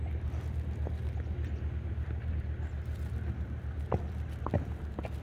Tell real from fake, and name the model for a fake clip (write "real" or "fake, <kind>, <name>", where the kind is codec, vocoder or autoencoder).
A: real